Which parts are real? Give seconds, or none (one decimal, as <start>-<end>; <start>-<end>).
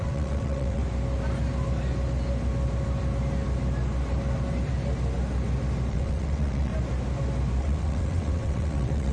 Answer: 0.8-5.9; 6.7-7.6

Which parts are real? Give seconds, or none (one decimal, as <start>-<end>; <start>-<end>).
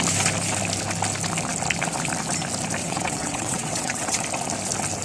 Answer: 0.0-2.8; 4.2-5.0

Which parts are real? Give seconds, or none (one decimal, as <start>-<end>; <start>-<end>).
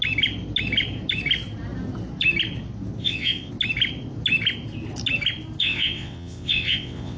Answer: 0.0-3.0; 3.5-5.6